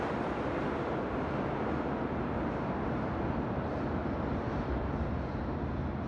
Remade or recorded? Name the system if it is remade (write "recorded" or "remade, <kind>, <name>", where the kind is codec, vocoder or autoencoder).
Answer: recorded